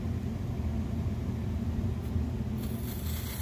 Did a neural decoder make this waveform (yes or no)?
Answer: no